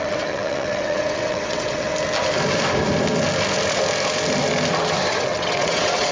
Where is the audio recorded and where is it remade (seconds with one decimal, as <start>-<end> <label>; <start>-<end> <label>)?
0.0-1.9 remade; 1.9-5.1 recorded; 5.1-6.1 remade